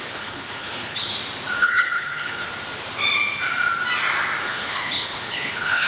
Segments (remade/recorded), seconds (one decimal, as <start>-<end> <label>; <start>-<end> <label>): 0.0-1.1 remade; 1.1-1.6 recorded; 1.6-2.5 remade; 2.5-4.4 recorded; 4.4-5.9 remade